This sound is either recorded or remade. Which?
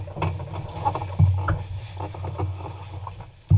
recorded